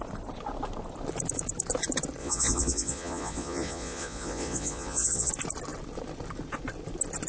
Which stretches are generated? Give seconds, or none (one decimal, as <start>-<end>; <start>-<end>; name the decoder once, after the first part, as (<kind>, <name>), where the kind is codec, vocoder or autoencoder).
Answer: 2.2-5.3 (vocoder, Vocos)